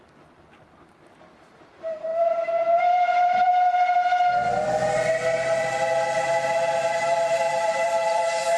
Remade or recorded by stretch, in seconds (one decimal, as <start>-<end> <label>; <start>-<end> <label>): 0.0-3.5 remade; 3.5-6.9 recorded; 6.9-8.6 remade